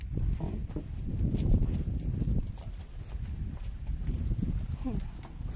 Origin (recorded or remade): recorded